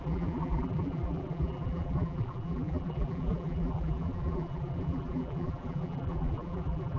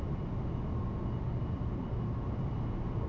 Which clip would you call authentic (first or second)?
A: second